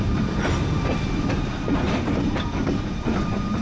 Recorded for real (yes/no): no